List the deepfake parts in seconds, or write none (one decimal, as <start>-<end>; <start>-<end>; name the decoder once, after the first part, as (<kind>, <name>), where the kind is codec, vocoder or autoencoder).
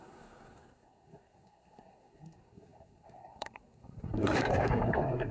0.0-5.3 (codec, SNAC)